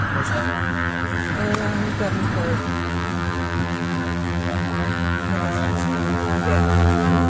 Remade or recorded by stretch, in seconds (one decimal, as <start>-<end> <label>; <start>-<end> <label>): 0.0-0.4 recorded; 0.4-1.3 remade; 1.3-2.6 recorded; 2.6-7.3 remade